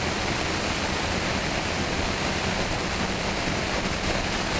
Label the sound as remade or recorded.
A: remade